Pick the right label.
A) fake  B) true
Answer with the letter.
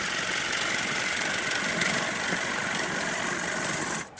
B